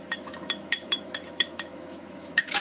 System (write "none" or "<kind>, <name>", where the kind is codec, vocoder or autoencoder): autoencoder, DAC-VAE